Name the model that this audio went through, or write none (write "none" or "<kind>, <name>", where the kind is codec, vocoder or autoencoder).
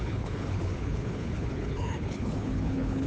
codec, HILCodec